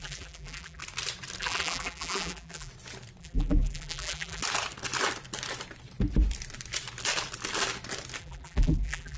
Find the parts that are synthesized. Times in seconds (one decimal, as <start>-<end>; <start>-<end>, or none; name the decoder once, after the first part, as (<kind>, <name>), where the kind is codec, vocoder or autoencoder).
0.0-0.8 (vocoder, BigVGAN v2); 1.4-2.7; 3.2-4.4; 8.2-9.2